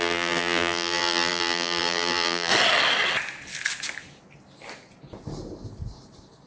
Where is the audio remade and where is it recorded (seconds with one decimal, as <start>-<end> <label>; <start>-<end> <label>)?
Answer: 0.0-2.5 remade; 2.5-6.5 recorded